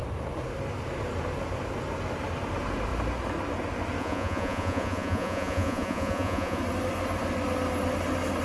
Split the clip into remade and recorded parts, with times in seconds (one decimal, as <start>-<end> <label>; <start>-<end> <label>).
0.0-4.0 recorded; 4.0-6.6 remade; 6.6-8.4 recorded